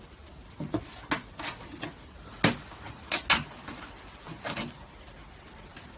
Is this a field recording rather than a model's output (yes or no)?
yes